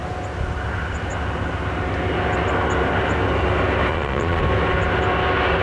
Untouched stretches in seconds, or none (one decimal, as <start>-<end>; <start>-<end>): 0.0-3.9; 4.4-5.6